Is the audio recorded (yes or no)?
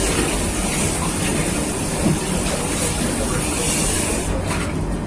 yes